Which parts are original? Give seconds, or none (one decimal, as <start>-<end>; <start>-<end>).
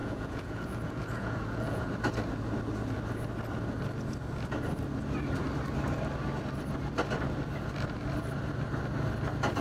1.9-9.6